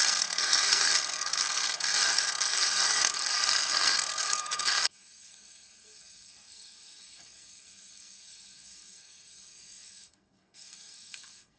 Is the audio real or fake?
fake